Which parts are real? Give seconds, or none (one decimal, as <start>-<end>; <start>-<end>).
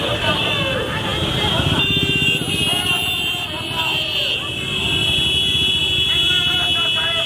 0.0-7.3